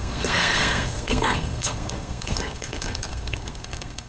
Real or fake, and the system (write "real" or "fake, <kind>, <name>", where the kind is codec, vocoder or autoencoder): fake, codec, SNAC